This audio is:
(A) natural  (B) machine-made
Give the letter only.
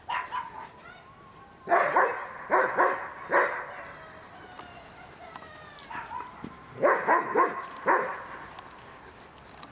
A